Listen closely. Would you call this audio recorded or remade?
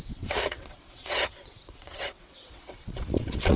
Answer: remade